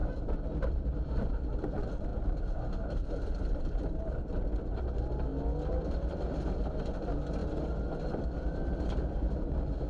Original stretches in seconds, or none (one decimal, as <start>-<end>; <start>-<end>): 0.0-9.9